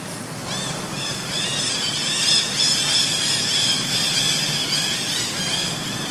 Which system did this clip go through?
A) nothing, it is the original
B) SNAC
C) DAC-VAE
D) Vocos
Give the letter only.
A